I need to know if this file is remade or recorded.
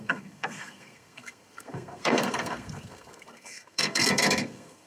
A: remade